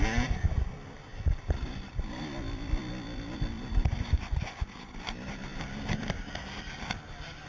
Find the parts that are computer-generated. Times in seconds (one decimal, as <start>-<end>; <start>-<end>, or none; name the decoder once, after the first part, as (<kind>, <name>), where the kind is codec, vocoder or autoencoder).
none